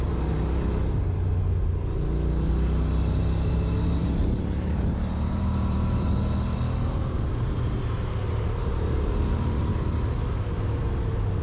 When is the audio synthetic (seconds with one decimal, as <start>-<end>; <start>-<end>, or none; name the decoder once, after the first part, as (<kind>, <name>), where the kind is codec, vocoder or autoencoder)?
4.0-6.2 (vocoder, BigVGAN v2); 8.2-9.6